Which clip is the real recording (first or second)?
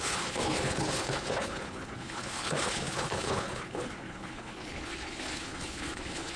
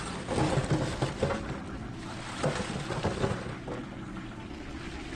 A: second